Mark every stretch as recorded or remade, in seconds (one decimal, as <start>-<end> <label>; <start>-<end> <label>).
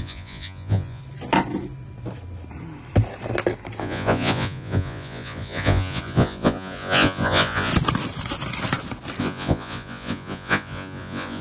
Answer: 0.0-1.0 remade; 1.0-3.8 recorded; 3.8-7.7 remade; 7.7-9.2 recorded; 9.2-11.4 remade